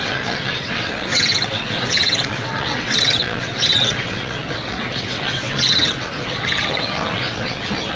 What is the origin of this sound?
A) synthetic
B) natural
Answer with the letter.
A